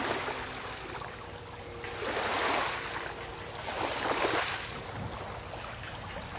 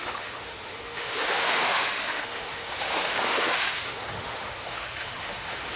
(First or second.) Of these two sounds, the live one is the first